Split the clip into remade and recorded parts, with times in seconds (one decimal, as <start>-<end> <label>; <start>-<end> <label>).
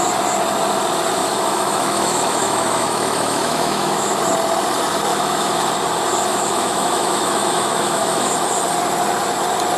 0.0-1.2 recorded; 1.2-4.2 remade; 4.2-5.1 recorded; 5.1-5.6 remade; 5.6-6.3 recorded; 6.3-8.3 remade; 8.3-9.8 recorded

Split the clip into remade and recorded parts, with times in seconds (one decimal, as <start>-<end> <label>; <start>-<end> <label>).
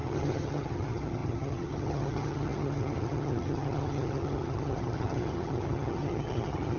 0.0-6.8 remade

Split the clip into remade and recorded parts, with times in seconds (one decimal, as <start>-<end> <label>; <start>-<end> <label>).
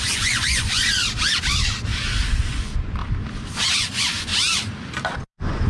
0.0-1.0 remade; 1.0-2.5 recorded; 2.5-3.0 remade; 3.0-3.8 recorded; 3.8-4.3 remade; 4.3-5.1 recorded; 5.1-5.7 remade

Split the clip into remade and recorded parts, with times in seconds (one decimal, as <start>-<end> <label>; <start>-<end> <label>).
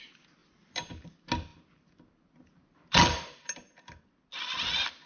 0.0-5.1 recorded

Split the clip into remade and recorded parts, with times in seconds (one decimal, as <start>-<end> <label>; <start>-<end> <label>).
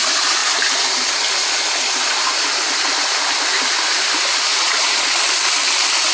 0.0-4.5 recorded; 4.5-5.2 remade; 5.2-6.1 recorded